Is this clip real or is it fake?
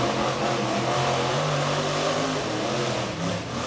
real